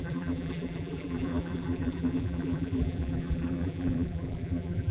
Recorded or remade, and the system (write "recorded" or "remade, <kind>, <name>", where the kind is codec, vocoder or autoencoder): remade, vocoder, BigVGAN v2